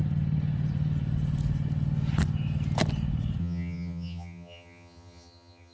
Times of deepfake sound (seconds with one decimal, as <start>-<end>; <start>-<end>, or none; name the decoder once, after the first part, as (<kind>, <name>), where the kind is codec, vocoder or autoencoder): 3.4-5.7 (vocoder, HiFi-GAN)